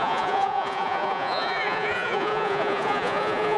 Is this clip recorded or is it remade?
remade